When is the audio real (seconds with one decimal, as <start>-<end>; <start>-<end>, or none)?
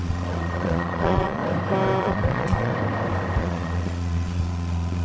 1.4-2.0; 2.7-3.4